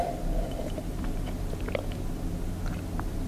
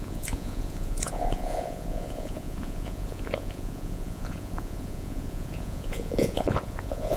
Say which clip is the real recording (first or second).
first